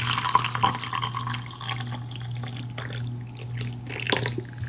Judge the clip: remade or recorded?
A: recorded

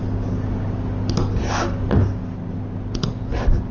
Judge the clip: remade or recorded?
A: recorded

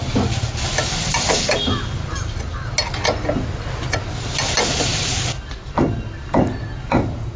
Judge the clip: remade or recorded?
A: recorded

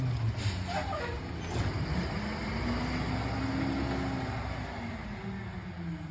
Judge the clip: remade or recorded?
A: recorded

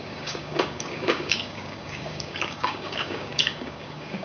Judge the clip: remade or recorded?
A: remade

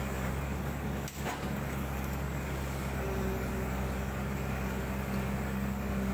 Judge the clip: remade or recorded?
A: remade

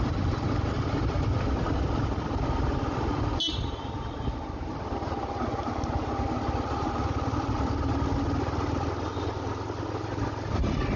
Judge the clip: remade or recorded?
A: recorded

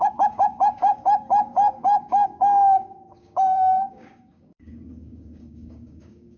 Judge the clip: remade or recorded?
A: remade